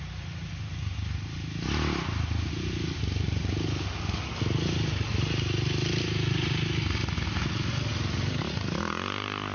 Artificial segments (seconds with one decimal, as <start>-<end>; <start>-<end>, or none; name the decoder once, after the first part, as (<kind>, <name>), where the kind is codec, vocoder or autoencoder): none